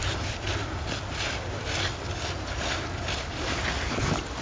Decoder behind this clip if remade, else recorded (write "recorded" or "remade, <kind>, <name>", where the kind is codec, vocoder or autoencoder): remade, vocoder, BigVGAN v2